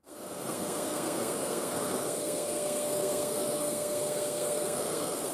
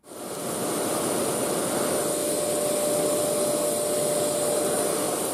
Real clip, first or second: second